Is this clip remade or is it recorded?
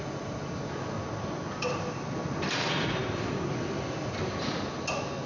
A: recorded